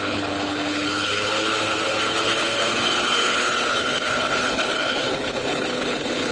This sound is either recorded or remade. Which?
remade